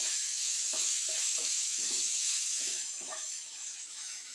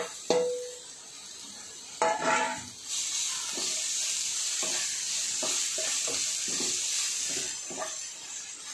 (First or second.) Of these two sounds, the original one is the second